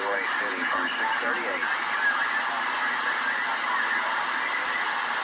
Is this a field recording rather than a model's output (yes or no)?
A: yes